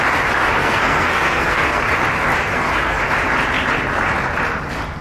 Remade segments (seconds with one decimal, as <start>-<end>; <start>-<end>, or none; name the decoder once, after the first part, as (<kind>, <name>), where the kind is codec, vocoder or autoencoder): 0.6-1.8 (codec, SNAC); 2.5-3.0